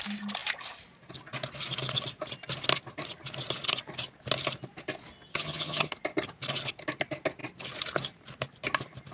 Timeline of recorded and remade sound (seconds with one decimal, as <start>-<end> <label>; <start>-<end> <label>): 0.0-5.3 recorded; 5.3-5.9 remade; 5.9-9.1 recorded